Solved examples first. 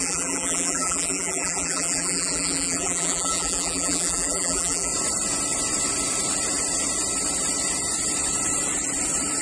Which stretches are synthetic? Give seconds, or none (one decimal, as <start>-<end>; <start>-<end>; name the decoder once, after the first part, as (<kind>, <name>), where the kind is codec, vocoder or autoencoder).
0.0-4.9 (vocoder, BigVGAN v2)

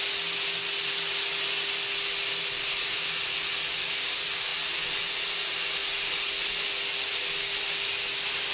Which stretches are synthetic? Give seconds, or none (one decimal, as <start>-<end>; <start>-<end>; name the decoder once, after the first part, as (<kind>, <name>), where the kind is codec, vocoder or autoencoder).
none

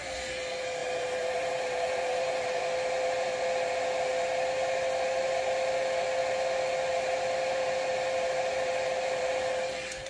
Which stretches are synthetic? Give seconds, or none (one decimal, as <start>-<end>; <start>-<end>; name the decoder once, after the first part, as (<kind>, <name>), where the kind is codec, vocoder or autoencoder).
0.8-2.6 (vocoder, BigVGAN v2)